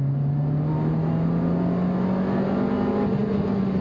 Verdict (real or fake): real